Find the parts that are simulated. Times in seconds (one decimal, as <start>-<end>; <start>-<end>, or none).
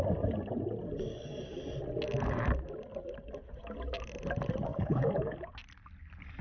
1.1-1.6; 4.7-5.5